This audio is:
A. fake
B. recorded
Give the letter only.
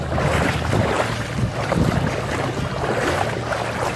B